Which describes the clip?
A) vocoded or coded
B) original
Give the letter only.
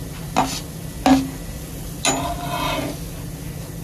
B